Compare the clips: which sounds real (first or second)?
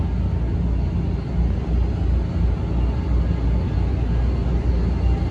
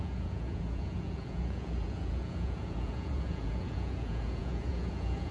first